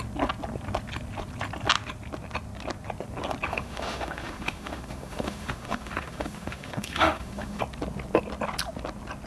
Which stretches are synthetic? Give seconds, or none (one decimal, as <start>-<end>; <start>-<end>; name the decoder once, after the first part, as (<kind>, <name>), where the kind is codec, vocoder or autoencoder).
3.5-7.6 (autoencoder, DAC-VAE)